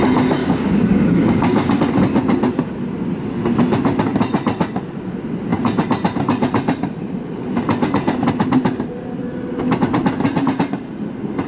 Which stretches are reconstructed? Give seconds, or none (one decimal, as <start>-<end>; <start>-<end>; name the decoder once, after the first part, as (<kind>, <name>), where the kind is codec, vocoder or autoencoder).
0.4-1.8 (codec, DAC)